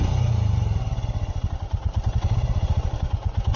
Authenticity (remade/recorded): recorded